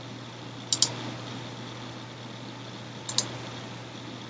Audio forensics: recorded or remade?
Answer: recorded